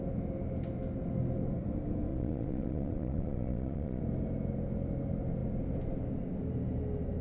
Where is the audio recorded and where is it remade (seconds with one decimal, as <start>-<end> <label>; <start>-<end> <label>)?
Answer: 0.0-2.1 recorded; 2.1-4.0 remade; 4.0-7.2 recorded